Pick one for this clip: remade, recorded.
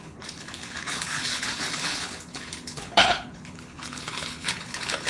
remade